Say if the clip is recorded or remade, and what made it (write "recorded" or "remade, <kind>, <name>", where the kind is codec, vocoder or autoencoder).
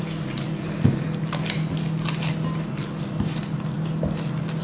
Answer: recorded